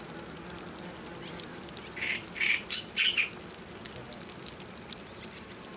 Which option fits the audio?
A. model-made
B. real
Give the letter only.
B